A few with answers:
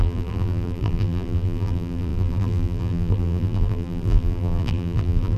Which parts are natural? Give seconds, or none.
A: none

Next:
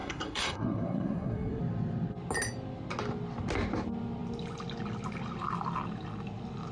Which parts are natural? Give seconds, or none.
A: 1.6-6.7

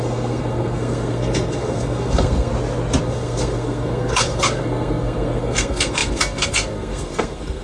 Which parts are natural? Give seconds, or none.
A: 2.5-3.0